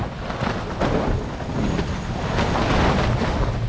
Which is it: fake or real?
real